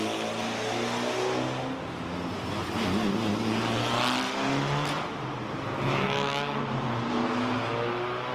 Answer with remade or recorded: recorded